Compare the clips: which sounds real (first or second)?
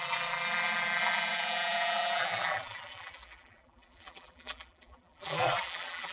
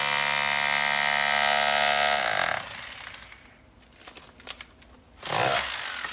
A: second